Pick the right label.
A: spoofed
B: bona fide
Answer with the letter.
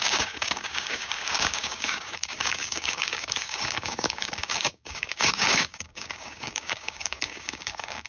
A